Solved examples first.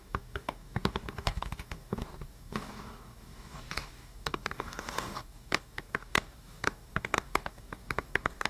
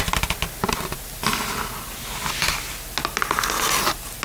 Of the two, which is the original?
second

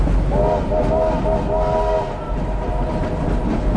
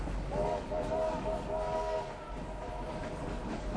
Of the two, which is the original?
first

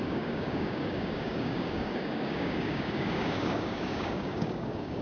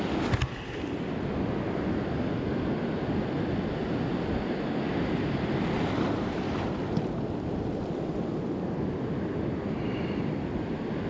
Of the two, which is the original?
second